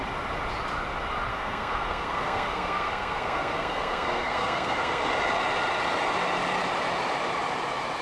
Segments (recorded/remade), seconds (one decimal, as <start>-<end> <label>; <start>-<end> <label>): 0.0-1.3 recorded; 1.3-5.0 remade; 5.0-8.0 recorded